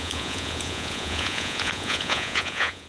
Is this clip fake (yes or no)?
yes